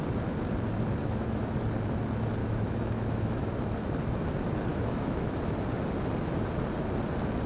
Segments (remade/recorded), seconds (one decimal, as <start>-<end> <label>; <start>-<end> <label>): 0.0-1.0 recorded; 1.0-1.6 remade; 1.6-2.4 recorded; 2.4-3.5 remade; 3.5-4.7 recorded; 4.7-5.3 remade; 5.3-7.5 recorded